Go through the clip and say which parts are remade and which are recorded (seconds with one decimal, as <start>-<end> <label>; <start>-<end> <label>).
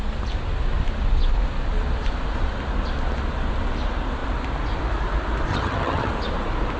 0.0-5.5 recorded; 5.5-6.1 remade; 6.1-6.8 recorded